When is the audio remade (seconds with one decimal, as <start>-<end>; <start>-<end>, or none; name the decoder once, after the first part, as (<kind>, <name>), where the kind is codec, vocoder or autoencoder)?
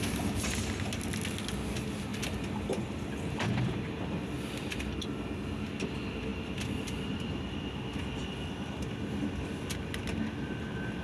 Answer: none